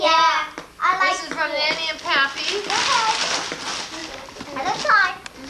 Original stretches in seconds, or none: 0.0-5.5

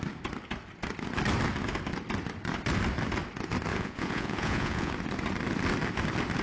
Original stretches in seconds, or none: 0.0-3.7; 4.9-6.4

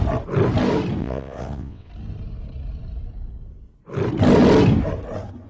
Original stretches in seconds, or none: 0.0-1.0; 1.9-5.5

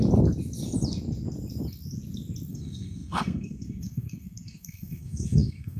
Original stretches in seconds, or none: 0.0-2.5